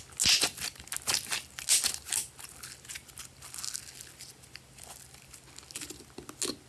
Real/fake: real